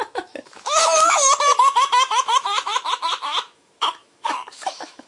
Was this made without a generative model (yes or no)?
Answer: no